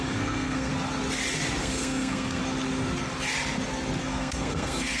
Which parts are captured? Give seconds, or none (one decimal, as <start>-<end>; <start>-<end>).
0.7-1.6; 2.4-4.0

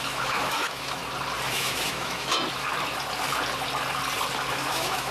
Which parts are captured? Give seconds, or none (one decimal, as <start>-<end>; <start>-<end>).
1.0-1.5; 2.3-4.5

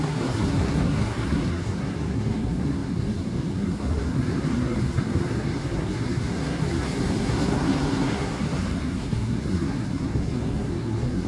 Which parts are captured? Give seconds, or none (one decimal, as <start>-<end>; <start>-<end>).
none

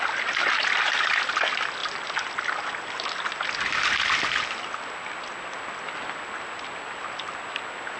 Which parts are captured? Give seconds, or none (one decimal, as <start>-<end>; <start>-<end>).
0.0-8.0